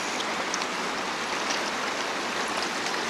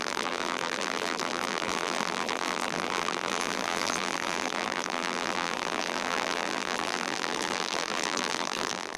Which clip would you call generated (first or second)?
second